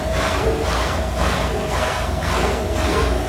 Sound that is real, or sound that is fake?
fake